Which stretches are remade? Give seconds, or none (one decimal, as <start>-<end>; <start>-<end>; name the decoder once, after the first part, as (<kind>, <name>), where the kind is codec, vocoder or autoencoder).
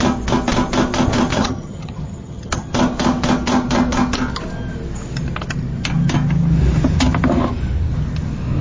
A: 1.3-2.7 (vocoder, HiFi-GAN)